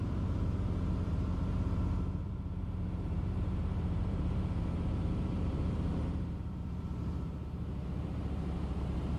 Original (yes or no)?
no